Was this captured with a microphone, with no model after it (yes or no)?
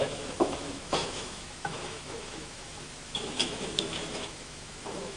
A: no